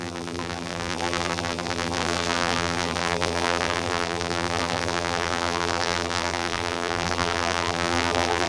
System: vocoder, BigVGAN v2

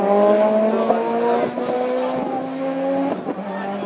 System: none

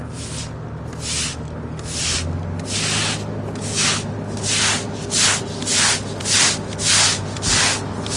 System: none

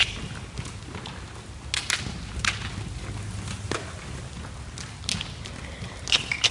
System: none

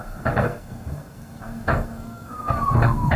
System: codec, SNAC